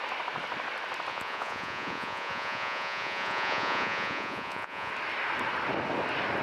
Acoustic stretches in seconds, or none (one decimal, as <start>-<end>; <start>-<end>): 0.0-1.1; 4.9-6.4